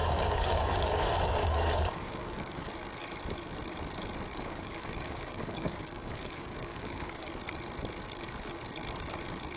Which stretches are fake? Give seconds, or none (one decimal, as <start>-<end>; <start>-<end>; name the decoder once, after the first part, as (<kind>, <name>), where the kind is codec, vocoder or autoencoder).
0.0-2.7 (codec, DAC); 4.3-7.3